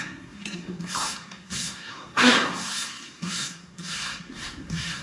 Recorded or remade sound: remade